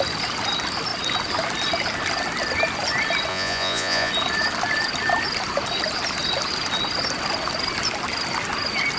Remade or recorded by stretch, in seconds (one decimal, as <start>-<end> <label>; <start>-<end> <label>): 0.0-3.3 recorded; 3.3-4.1 remade; 4.1-9.0 recorded